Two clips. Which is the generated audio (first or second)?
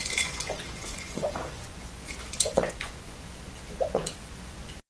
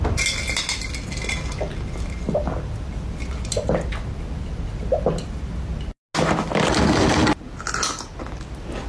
first